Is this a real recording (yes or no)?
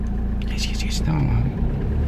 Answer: yes